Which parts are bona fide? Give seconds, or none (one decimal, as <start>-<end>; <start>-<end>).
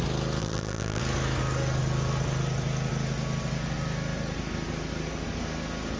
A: 0.0-0.4; 1.0-6.0